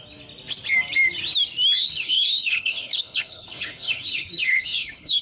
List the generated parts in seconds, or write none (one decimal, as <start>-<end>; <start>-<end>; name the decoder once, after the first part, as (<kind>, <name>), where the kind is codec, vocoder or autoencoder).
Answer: 1.8-5.2 (codec, HILCodec)